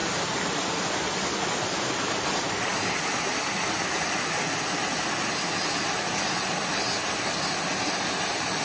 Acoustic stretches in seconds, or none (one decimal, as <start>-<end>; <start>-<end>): 0.0-8.6